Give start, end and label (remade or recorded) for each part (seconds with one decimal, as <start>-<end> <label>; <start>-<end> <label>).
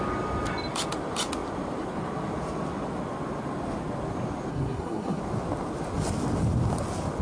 0.0-4.5 recorded; 4.5-5.2 remade; 5.2-7.2 recorded